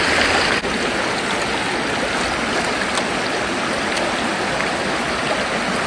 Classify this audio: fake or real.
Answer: real